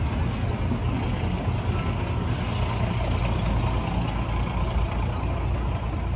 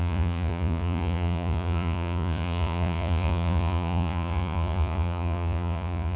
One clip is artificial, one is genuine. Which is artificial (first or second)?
second